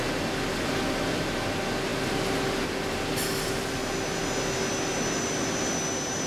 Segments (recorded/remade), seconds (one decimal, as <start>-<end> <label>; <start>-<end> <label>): 0.0-6.3 recorded